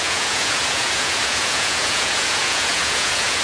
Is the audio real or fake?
fake